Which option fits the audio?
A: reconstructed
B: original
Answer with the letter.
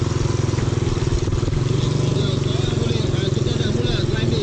B